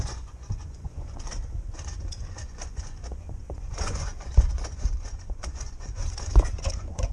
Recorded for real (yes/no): no